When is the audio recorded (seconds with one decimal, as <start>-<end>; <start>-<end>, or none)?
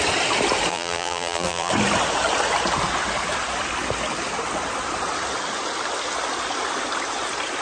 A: 0.0-0.7; 1.7-7.6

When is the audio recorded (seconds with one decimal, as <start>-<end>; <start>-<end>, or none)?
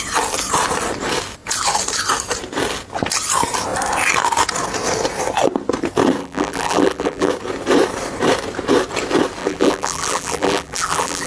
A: 0.0-6.2; 7.3-9.4